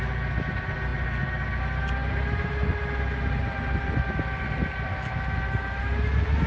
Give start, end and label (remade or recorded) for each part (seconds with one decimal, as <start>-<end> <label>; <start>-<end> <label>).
0.0-6.5 recorded